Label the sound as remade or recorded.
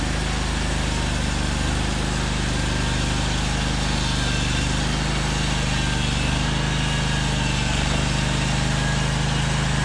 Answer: recorded